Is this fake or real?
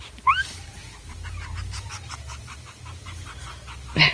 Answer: fake